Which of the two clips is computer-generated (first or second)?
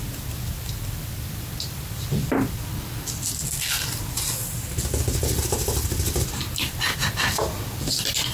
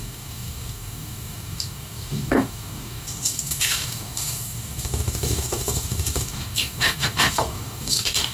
second